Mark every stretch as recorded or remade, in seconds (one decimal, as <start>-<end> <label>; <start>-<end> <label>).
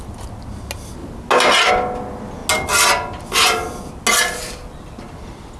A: 0.0-5.6 recorded